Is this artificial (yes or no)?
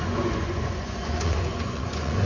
yes